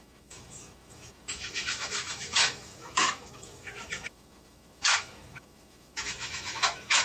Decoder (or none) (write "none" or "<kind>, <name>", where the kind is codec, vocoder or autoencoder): autoencoder, DAC-VAE